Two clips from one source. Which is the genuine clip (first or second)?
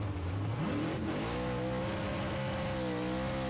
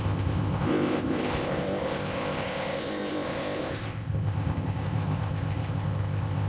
first